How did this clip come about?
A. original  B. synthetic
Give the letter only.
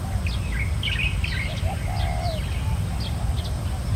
A